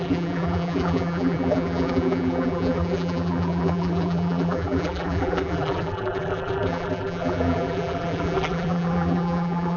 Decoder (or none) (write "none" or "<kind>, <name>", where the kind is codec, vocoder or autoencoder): vocoder, BigVGAN v2